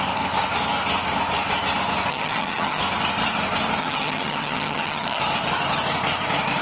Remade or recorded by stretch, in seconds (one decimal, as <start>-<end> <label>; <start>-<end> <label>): 0.0-2.1 recorded; 2.1-2.8 remade; 2.8-3.8 recorded; 3.8-5.2 remade; 5.2-6.6 recorded